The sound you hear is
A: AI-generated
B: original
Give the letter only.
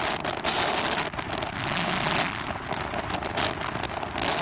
B